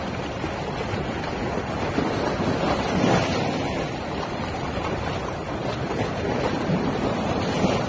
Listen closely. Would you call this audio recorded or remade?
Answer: recorded